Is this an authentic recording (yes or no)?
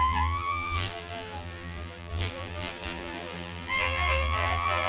no